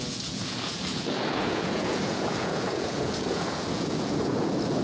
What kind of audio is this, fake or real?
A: fake